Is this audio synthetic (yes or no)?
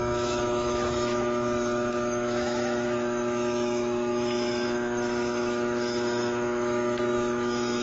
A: yes